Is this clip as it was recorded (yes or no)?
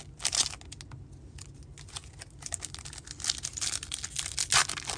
yes